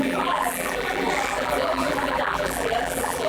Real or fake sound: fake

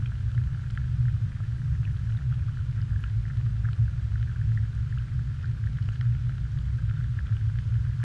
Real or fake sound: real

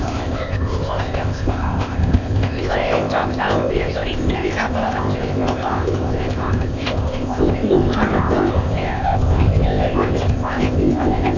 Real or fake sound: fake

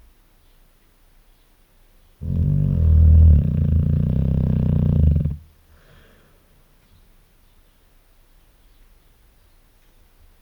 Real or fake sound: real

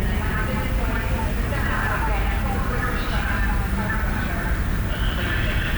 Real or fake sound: real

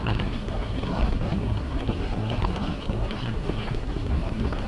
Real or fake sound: fake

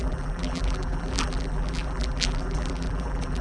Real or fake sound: fake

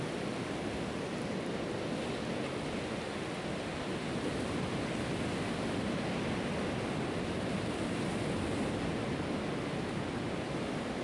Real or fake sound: real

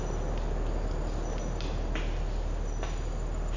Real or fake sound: real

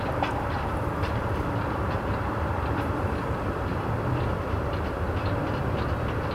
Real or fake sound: fake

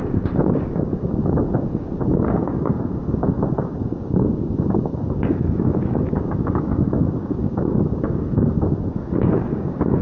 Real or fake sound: fake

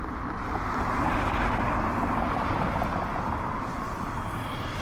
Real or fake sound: real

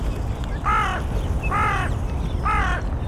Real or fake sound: real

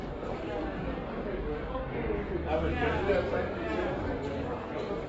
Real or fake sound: fake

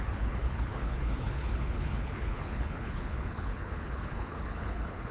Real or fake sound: fake